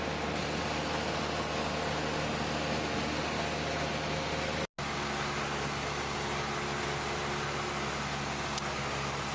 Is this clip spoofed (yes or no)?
no